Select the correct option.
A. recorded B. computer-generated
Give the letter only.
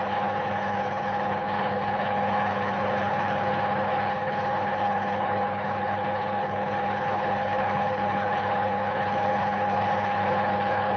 B